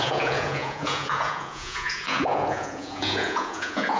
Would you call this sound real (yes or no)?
no